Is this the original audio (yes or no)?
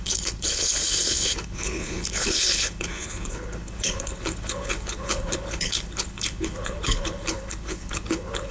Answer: no